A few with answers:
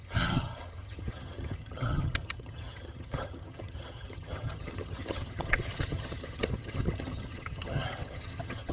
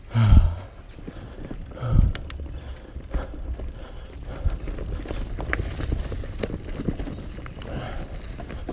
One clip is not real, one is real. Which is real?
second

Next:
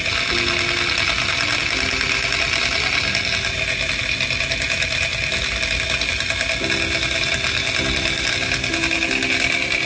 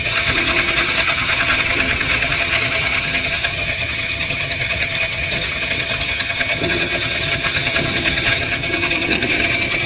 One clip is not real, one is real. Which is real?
first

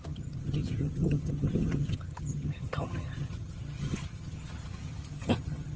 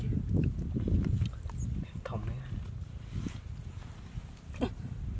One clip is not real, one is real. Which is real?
second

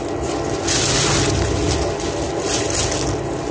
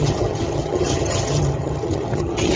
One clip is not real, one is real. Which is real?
first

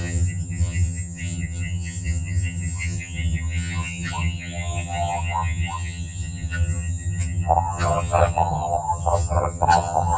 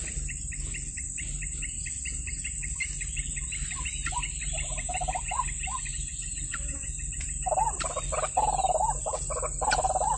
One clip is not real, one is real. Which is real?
second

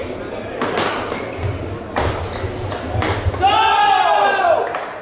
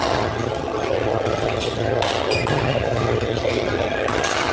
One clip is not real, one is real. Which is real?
first